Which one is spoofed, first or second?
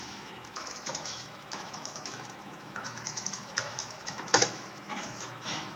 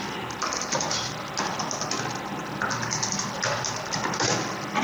first